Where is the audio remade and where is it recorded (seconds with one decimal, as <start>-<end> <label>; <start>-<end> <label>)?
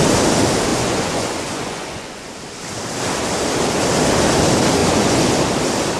0.0-0.7 recorded; 0.7-2.3 remade; 2.3-4.8 recorded; 4.8-5.3 remade; 5.3-6.0 recorded